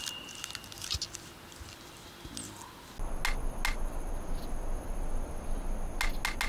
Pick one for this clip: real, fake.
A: real